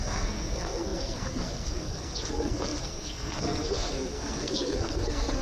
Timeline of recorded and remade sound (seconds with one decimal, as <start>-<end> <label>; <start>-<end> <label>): 0.0-5.4 remade